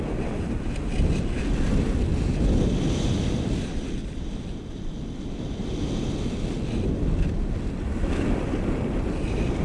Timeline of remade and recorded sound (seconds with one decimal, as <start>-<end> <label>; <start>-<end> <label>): 0.0-9.6 recorded